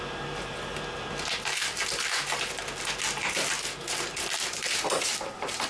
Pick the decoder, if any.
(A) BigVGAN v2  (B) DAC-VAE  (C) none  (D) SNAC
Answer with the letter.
C